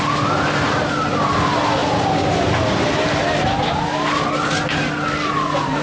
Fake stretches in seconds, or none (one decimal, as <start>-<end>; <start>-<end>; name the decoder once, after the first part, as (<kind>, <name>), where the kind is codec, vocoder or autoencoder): none